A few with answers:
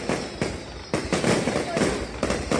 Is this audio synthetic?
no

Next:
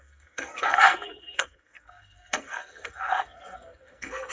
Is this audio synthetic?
yes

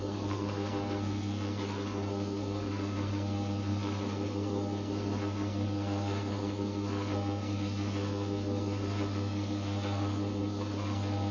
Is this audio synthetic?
yes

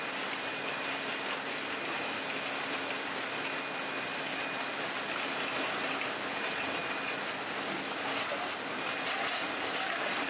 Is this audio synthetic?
no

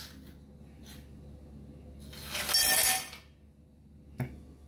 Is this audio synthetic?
no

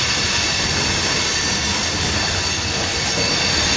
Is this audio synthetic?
no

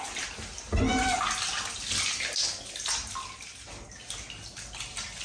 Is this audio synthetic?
no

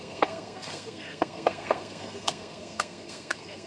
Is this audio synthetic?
yes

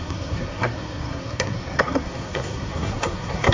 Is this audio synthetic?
yes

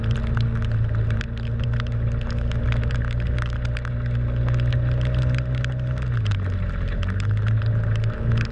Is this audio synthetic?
no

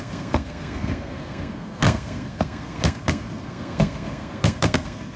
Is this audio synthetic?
yes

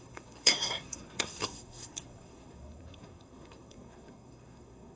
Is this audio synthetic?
yes